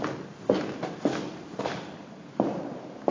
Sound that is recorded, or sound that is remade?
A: recorded